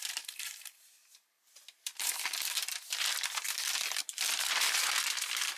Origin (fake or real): fake